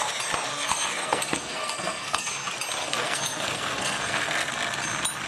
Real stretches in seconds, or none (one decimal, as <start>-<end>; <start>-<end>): 0.0-0.5; 2.3-2.8; 4.5-5.3